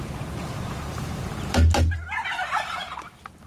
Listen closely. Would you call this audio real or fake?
fake